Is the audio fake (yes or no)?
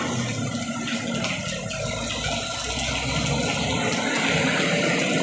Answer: no